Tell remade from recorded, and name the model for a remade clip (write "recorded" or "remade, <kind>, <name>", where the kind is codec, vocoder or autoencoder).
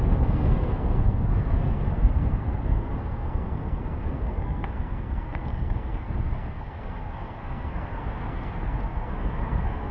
remade, codec, SNAC